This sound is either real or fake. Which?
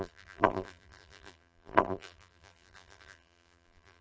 fake